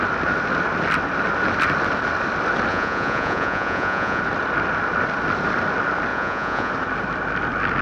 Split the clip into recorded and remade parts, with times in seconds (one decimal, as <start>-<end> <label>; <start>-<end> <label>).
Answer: 0.0-2.7 recorded; 2.7-4.2 remade; 4.2-6.1 recorded; 6.1-6.7 remade; 6.7-7.8 recorded